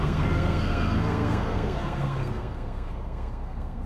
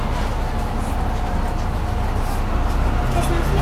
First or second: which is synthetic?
first